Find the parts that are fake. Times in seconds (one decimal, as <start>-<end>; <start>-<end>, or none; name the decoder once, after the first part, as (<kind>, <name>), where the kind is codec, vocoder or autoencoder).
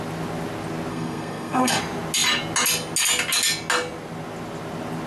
0.9-1.8 (codec, SNAC)